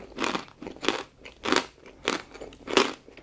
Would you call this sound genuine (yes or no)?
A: yes